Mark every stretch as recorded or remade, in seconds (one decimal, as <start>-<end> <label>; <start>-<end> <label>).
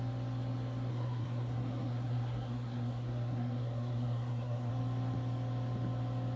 0.0-0.9 recorded; 0.9-4.7 remade; 4.7-6.4 recorded